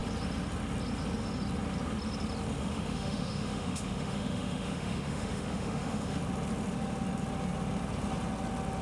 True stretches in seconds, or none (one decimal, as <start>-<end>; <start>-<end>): 0.0-2.6; 6.2-8.8